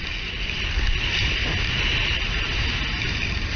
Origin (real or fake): real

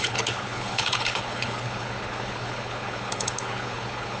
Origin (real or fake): fake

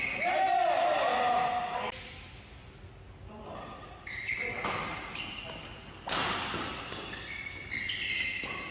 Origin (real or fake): real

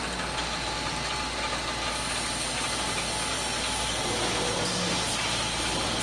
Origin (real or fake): real